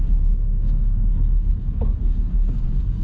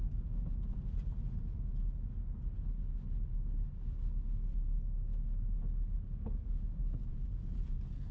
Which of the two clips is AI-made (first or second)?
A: first